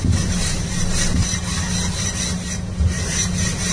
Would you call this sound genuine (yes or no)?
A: yes